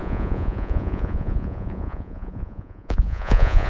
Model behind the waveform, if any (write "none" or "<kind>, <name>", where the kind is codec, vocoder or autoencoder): vocoder, Vocos